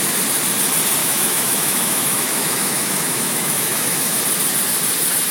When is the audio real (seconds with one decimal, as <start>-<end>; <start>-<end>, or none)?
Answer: 0.0-1.0; 4.2-5.3